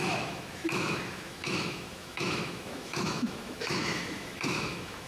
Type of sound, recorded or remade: remade